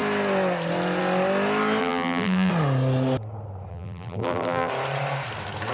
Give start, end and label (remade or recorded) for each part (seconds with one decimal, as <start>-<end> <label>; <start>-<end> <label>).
0.0-1.8 recorded; 1.8-2.5 remade; 2.5-3.7 recorded; 3.7-4.7 remade; 4.7-5.7 recorded